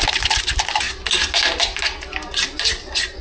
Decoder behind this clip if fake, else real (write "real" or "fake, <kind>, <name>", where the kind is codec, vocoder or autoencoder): real